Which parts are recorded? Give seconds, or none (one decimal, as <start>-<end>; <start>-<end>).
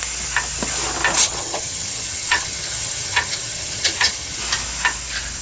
0.0-1.2; 4.4-5.4